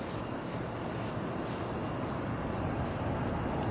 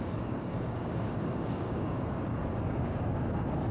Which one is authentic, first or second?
first